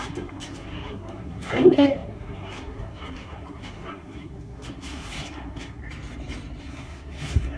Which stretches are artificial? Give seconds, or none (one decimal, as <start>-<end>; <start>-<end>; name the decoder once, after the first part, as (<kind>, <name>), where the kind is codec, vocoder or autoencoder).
0.0-5.8 (codec, SNAC); 6.6-7.6